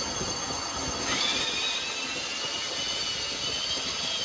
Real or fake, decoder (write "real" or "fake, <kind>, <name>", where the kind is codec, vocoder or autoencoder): real